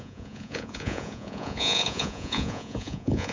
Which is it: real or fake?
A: fake